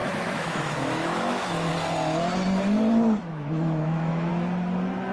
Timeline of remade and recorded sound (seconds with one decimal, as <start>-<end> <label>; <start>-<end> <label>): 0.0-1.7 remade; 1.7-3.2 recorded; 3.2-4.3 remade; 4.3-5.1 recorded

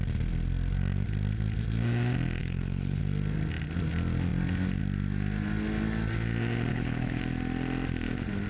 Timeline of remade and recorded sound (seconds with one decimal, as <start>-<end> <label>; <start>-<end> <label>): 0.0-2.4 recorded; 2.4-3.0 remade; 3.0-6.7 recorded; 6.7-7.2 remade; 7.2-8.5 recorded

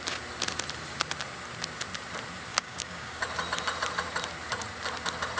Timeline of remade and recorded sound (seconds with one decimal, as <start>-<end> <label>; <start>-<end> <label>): 0.0-2.5 recorded; 2.5-3.2 remade; 3.2-5.4 recorded

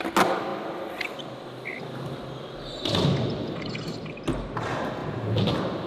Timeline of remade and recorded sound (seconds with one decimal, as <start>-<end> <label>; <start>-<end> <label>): 0.0-5.9 recorded